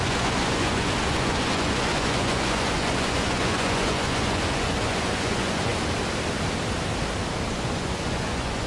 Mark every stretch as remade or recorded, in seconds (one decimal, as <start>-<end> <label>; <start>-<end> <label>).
0.0-5.7 remade; 5.7-7.5 recorded; 7.5-8.7 remade